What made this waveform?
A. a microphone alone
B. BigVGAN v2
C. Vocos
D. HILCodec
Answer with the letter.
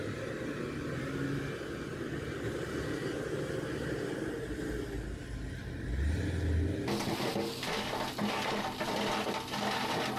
A